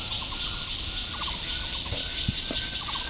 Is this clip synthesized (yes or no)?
no